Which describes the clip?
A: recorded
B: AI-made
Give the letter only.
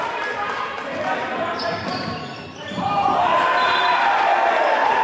B